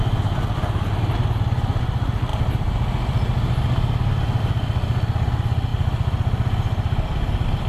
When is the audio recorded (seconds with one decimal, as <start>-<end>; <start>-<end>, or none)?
0.0-7.7